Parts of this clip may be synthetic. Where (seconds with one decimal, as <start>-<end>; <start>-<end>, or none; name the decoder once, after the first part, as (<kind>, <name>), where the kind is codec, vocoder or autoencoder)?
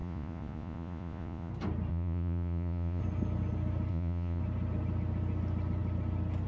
0.0-1.5 (vocoder, Vocos); 1.9-3.0; 3.9-4.4